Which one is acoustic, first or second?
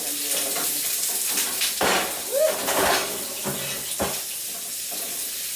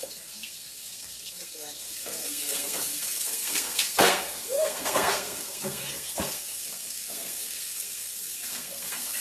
first